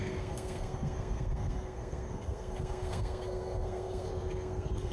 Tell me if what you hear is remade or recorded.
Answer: remade